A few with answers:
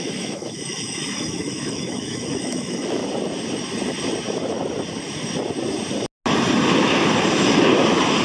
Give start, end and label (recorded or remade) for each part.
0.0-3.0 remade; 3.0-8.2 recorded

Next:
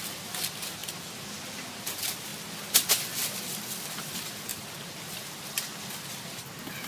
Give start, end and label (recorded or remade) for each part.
0.0-6.9 recorded

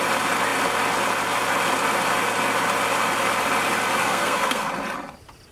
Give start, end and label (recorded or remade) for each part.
0.0-4.0 recorded; 4.0-4.7 remade; 4.7-5.5 recorded

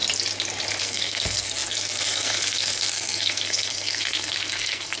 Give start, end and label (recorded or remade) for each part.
0.0-0.8 recorded; 0.8-5.0 remade

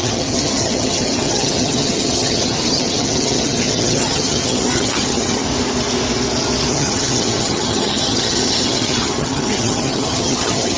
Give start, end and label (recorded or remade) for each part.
0.0-5.5 remade; 5.5-6.7 recorded; 6.7-10.8 remade